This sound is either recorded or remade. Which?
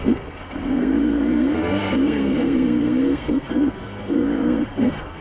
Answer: remade